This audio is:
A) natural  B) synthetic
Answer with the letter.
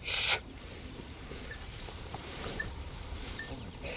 B